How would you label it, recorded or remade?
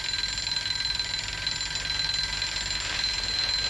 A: recorded